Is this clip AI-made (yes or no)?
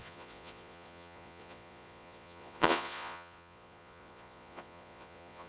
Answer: yes